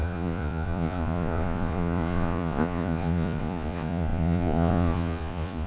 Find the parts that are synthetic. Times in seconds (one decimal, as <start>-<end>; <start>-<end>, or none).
0.0-5.7